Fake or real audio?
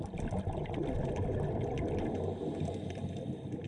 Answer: real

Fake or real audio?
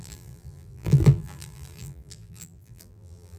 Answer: fake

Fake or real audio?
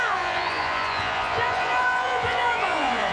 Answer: fake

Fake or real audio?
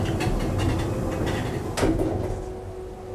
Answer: real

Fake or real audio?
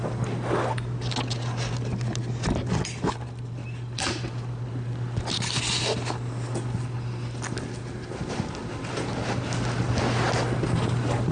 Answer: real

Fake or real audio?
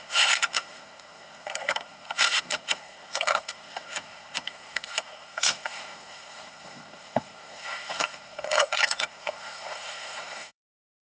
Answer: fake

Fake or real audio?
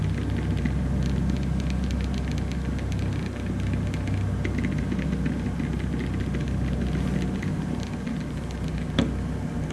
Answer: real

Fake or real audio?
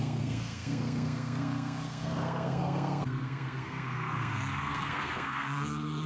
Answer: fake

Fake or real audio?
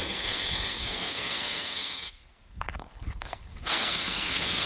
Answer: fake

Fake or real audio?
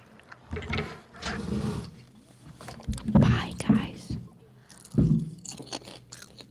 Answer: real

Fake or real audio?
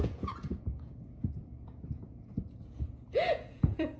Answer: fake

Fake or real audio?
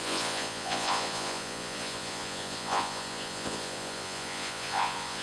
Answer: fake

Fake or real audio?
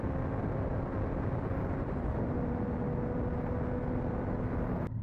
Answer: real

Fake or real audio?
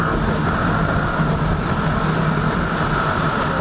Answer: real